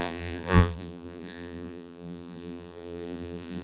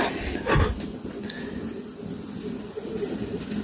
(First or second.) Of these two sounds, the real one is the second